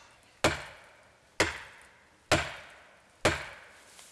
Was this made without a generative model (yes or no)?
yes